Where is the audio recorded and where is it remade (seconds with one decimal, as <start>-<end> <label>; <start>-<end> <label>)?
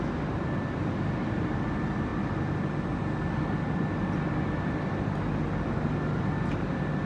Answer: 0.0-7.1 recorded